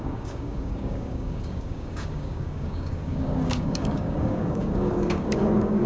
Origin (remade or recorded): remade